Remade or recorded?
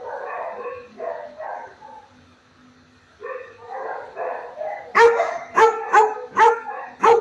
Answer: remade